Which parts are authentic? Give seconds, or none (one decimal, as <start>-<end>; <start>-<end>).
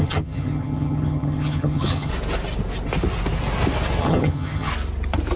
2.1-4.0; 4.7-5.4